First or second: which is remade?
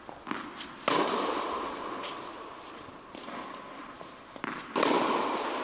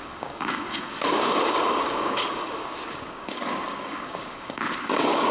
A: second